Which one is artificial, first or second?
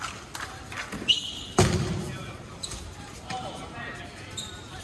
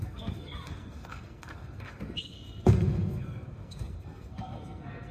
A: second